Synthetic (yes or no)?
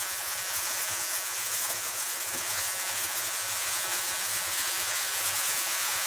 yes